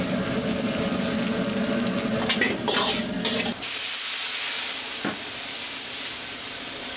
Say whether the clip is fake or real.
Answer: real